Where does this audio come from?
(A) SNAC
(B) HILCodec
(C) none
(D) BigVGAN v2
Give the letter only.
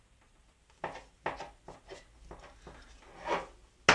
C